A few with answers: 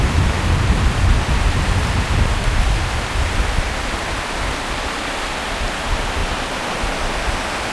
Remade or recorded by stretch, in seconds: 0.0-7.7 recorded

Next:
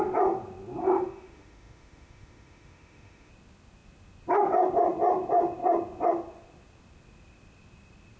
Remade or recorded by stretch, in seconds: 0.0-0.8 recorded; 0.8-3.3 remade; 3.3-8.2 recorded